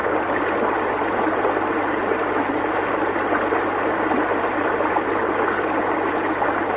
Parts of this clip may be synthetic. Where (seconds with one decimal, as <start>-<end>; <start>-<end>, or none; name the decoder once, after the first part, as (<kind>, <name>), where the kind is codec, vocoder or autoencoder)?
none